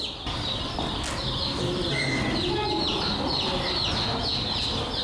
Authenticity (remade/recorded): recorded